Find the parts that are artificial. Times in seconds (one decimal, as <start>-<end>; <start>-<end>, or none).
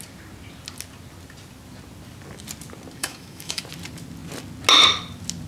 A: 3.0-3.6